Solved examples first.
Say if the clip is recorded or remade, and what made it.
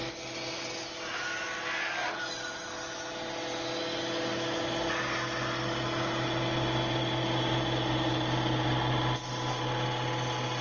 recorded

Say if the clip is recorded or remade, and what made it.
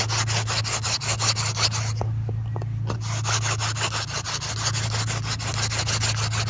recorded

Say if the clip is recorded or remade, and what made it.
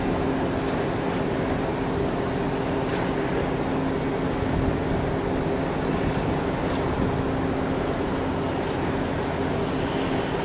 recorded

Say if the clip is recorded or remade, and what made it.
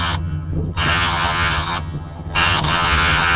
remade, vocoder, HiFi-GAN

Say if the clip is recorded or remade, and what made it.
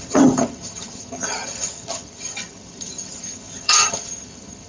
remade, vocoder, HiFi-GAN